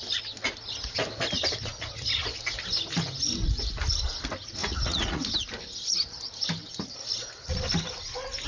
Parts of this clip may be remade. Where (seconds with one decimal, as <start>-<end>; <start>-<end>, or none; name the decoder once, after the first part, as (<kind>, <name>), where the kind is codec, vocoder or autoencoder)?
4.6-5.2 (vocoder, Vocos)